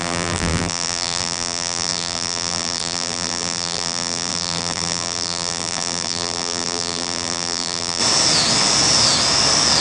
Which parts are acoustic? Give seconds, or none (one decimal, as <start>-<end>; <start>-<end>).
8.0-9.8